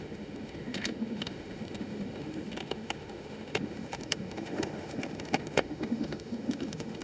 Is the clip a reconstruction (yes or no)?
yes